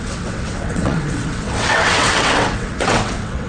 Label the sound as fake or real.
fake